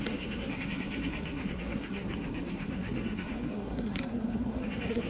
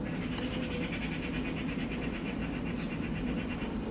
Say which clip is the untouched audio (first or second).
second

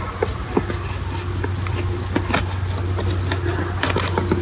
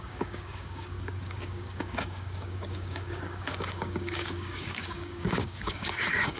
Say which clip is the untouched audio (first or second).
first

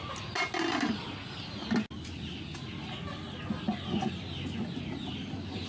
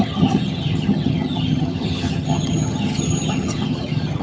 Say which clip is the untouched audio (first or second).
first